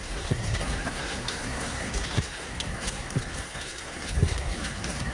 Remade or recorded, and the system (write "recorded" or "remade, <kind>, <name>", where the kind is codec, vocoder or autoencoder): remade, codec, SNAC